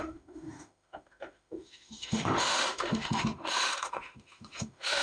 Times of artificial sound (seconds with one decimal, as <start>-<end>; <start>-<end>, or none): 0.0-5.0